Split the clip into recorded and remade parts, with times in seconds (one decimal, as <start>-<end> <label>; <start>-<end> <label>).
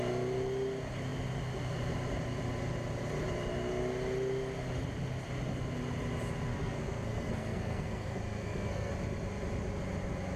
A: 0.0-6.5 recorded; 6.5-8.9 remade; 8.9-10.4 recorded